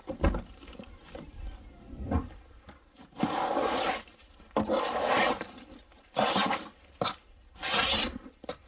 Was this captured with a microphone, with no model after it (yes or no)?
yes